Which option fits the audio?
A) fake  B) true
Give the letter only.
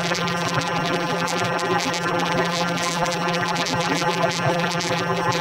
A